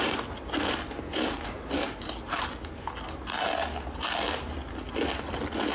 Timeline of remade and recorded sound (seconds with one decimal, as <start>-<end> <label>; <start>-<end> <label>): 0.0-1.1 recorded; 1.1-2.3 remade; 2.3-5.7 recorded

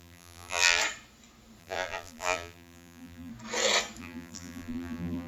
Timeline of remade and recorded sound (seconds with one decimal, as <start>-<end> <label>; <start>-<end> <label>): 0.0-0.8 remade; 0.8-1.6 recorded; 1.6-3.3 remade; 3.3-4.0 recorded; 4.0-5.3 remade

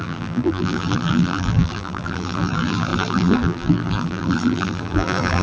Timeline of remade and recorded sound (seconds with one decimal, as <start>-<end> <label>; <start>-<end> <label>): 0.0-5.4 remade

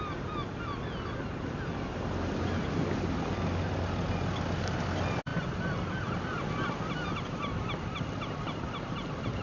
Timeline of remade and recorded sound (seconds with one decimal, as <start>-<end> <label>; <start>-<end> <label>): 0.0-9.4 recorded